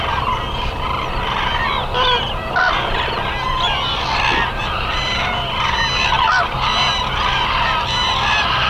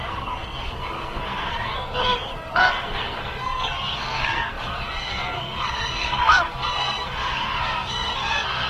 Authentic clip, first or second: first